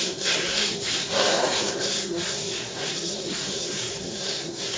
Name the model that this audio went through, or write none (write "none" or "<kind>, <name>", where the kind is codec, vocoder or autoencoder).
codec, SNAC